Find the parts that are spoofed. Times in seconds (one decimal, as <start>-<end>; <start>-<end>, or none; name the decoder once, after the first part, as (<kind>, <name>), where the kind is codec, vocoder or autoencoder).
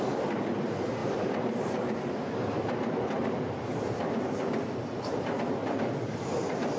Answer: 0.0-5.6 (vocoder, BigVGAN v2)